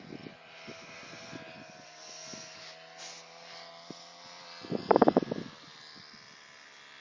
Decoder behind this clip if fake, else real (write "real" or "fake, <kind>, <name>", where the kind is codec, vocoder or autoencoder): real